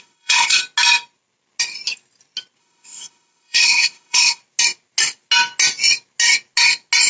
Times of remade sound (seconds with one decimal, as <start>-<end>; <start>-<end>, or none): 0.0-0.6; 2.6-4.4